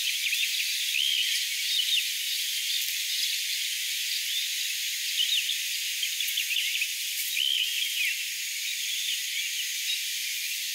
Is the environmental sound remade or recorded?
recorded